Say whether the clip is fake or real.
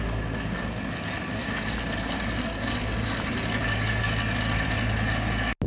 real